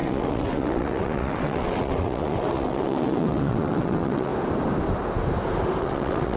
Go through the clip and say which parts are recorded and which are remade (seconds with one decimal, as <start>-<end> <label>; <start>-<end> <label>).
0.0-4.3 remade; 4.3-5.8 recorded; 5.8-6.4 remade